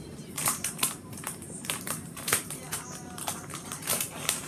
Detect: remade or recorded remade